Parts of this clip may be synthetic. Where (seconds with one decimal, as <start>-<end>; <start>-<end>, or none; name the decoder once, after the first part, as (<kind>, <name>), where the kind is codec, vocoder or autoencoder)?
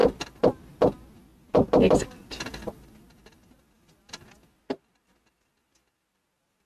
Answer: none